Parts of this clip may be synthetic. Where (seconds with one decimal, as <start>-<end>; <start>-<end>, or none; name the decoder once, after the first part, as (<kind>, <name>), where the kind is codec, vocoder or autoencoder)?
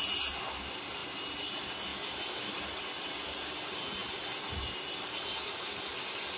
none